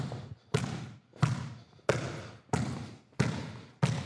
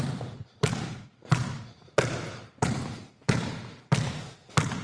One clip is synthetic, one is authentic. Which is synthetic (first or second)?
second